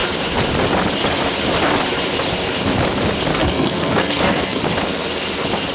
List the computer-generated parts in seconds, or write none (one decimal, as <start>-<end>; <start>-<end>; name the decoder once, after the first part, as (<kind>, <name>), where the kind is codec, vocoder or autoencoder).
3.3-4.6 (codec, SNAC)